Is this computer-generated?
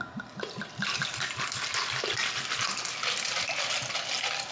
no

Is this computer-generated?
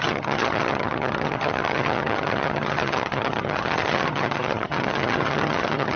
yes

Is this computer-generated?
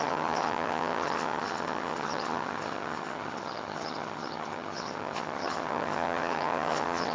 yes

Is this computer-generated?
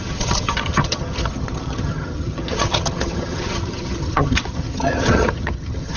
yes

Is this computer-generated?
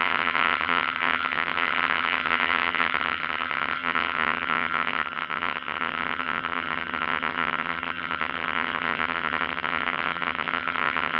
yes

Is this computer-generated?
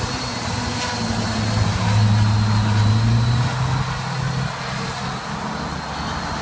no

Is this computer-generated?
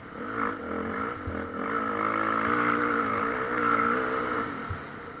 no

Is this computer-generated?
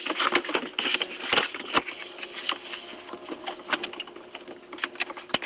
no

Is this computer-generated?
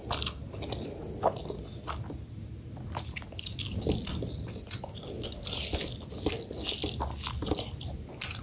no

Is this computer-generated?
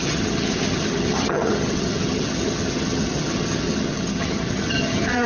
yes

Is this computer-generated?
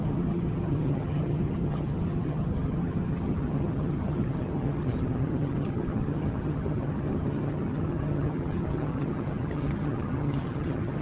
yes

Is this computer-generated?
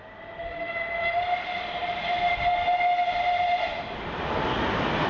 no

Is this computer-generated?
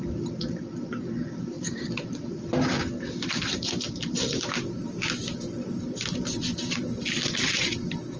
no